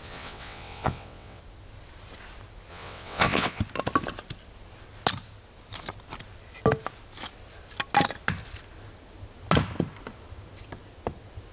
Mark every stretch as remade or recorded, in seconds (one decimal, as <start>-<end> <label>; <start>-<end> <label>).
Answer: 0.0-1.4 remade; 1.4-2.7 recorded; 2.7-3.6 remade; 3.6-11.5 recorded